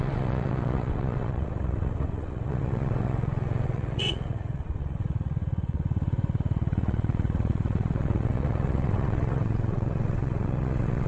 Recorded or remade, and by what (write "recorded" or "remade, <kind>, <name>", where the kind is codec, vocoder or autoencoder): remade, vocoder, WaveNeXt